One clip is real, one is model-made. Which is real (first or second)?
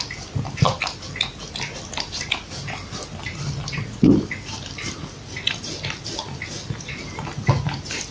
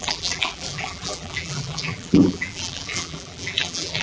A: first